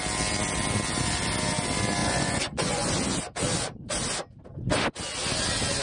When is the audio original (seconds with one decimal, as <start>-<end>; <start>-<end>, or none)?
0.0-2.0; 2.9-5.8